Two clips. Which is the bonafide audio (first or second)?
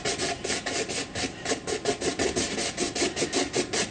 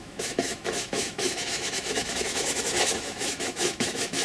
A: first